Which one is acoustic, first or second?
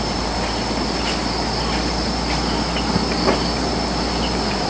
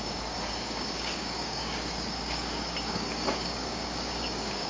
first